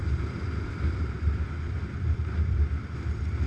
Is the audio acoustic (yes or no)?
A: no